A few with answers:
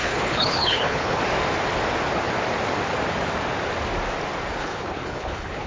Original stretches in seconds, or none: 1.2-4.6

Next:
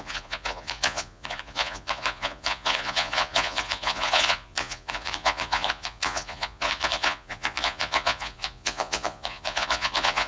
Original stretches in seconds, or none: none

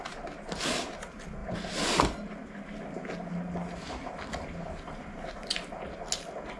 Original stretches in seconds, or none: 0.0-6.6

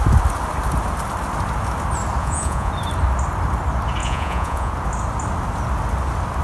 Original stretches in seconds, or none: 0.0-2.2; 2.7-4.0; 4.7-6.4

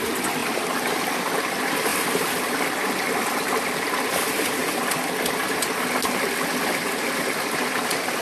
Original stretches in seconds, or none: 0.0-0.4; 1.4-1.9; 2.6-4.6; 7.0-8.2

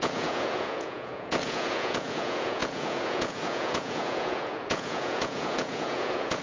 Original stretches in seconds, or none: none